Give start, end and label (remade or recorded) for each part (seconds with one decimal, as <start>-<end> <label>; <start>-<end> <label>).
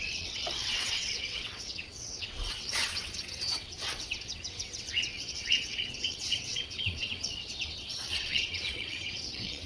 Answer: 0.0-9.7 remade